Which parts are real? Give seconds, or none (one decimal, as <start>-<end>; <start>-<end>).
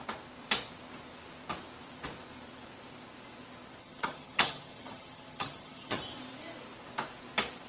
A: 0.0-3.8; 6.0-7.7